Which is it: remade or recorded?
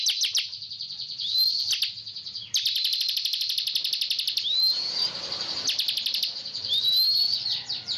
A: remade